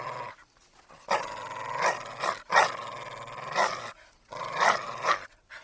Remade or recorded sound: recorded